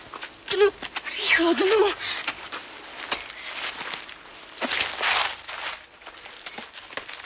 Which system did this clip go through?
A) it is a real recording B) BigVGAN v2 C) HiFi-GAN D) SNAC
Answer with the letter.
A